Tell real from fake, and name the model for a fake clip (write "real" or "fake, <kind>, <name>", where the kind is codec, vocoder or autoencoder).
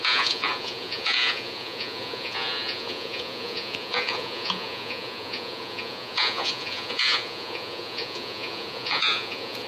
fake, vocoder, Vocos